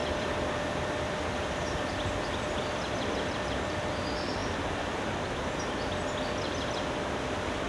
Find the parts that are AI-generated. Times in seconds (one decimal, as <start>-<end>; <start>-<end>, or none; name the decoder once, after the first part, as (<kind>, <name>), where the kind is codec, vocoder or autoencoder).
0.0-2.3 (vocoder, BigVGAN v2); 4.4-5.7